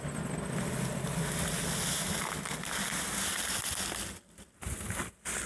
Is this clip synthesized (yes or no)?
no